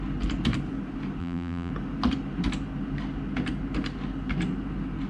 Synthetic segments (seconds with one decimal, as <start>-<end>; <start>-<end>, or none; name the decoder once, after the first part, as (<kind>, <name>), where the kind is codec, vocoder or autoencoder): 1.2-1.7 (vocoder, BigVGAN v2)